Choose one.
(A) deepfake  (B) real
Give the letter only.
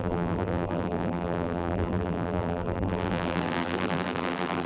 A